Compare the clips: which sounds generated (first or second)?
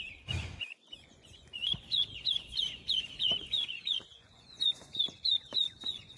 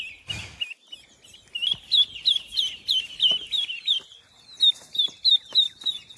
first